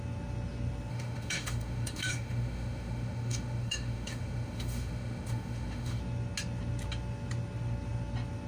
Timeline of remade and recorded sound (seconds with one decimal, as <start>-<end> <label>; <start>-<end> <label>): 0.0-0.9 recorded; 0.9-6.0 remade; 6.0-8.5 recorded